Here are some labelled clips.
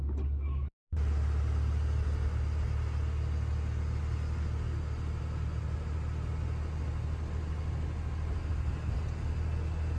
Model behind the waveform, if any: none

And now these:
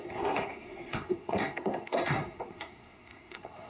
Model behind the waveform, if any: codec, SNAC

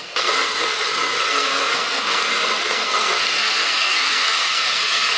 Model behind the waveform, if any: codec, SNAC